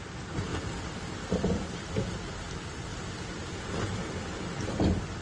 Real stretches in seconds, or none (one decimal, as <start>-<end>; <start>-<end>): 0.0-5.2